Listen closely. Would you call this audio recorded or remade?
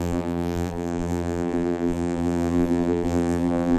remade